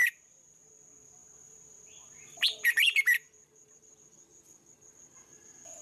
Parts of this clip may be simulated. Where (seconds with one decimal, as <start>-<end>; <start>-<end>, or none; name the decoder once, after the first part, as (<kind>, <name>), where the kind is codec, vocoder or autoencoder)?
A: 0.0-0.7 (vocoder, BigVGAN v2); 1.2-4.2